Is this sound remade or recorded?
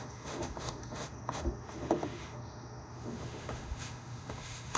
remade